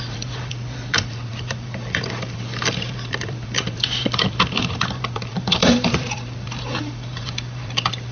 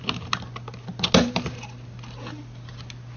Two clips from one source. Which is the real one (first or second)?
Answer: second